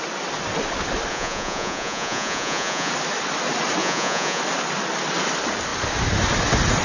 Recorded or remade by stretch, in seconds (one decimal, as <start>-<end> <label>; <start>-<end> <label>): 0.0-1.1 recorded; 1.1-2.9 remade; 2.9-3.8 recorded; 3.8-4.4 remade; 4.4-6.8 recorded